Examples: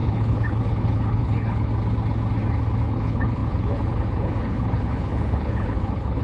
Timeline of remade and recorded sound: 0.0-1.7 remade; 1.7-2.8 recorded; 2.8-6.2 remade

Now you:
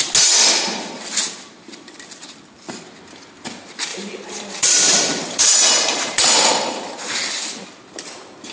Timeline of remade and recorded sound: 0.0-3.9 recorded; 3.9-7.2 remade; 7.2-8.5 recorded

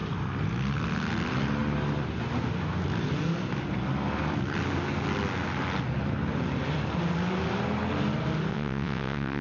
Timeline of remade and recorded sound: 0.0-8.5 recorded; 8.5-9.4 remade

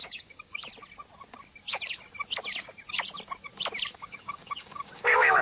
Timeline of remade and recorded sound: 0.0-0.7 remade; 0.7-3.9 recorded; 3.9-5.4 remade

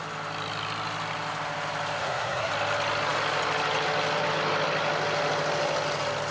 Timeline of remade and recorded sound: 0.0-2.0 recorded; 2.0-2.5 remade; 2.5-6.3 recorded